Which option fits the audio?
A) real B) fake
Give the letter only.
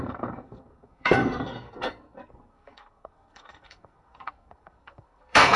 B